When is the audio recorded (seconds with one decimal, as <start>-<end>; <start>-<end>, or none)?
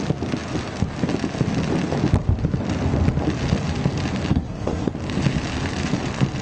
0.0-4.3; 4.9-6.4